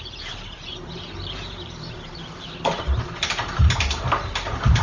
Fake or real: fake